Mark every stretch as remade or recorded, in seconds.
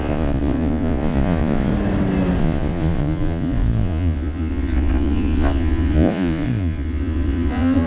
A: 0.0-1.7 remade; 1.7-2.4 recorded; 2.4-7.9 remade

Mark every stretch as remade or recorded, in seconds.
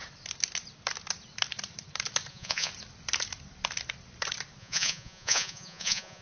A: 0.0-2.3 recorded; 2.3-2.7 remade; 2.7-4.6 recorded; 4.6-6.2 remade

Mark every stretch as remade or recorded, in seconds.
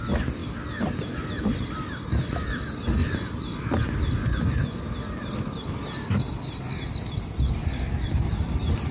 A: 0.0-8.9 recorded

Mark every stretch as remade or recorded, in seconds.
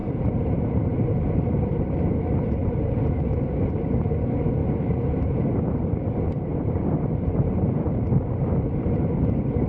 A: 0.0-2.0 remade; 2.0-4.6 recorded; 4.6-5.4 remade; 5.4-6.5 recorded; 6.5-9.7 remade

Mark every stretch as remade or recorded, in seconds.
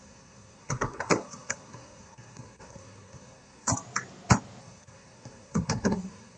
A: 0.0-3.7 remade; 3.7-4.6 recorded; 4.6-6.4 remade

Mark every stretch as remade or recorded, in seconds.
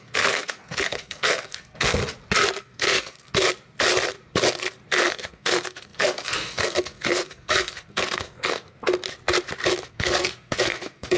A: 0.0-2.0 remade; 2.0-2.6 recorded; 2.6-3.3 remade; 3.3-5.1 recorded; 5.1-8.8 remade; 8.8-9.9 recorded; 9.9-11.2 remade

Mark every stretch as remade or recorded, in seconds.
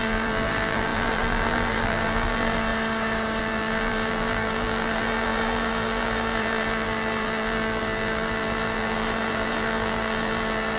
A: 0.0-2.7 remade; 2.7-3.4 recorded; 3.4-10.8 remade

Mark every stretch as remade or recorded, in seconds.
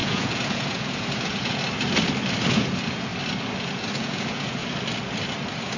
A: 0.0-1.6 remade; 1.6-2.5 recorded; 2.5-3.1 remade; 3.1-3.6 recorded; 3.6-4.6 remade; 4.6-5.8 recorded